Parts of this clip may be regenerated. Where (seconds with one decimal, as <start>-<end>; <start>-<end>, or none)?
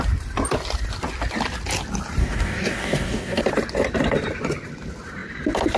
2.2-3.4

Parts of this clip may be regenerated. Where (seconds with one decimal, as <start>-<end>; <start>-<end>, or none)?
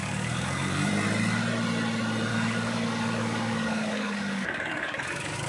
0.0-0.9; 2.3-5.5